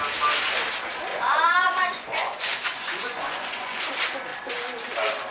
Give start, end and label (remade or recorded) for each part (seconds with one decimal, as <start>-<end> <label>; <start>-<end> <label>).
0.0-1.1 recorded; 1.1-3.8 remade; 3.8-5.3 recorded